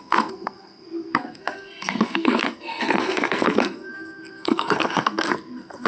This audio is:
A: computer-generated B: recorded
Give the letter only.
A